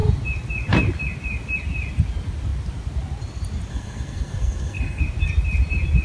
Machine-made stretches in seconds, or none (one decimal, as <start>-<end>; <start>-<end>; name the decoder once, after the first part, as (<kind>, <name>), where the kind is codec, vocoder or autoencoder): 3.7-5.0 (codec, SNAC)